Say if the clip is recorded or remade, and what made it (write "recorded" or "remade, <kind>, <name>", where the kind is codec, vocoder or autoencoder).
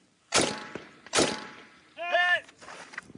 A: remade, vocoder, BigVGAN v2